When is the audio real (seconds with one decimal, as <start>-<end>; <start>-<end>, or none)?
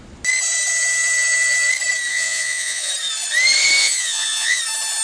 0.0-2.1; 2.9-3.8; 4.6-5.0